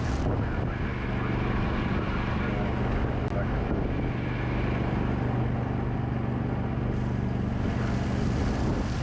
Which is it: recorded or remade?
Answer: recorded